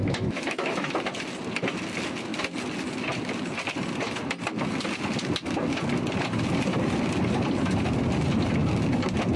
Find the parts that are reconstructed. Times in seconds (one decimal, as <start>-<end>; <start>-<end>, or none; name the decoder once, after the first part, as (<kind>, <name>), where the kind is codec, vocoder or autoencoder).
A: 0.0-0.9 (autoencoder, DAC-VAE)